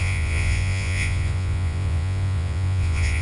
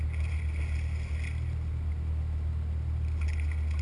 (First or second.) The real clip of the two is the second